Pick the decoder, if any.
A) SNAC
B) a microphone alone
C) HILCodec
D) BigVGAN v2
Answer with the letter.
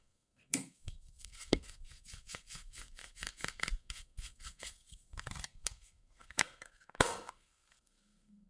A